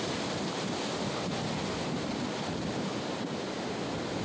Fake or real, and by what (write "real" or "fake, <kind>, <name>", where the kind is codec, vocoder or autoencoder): real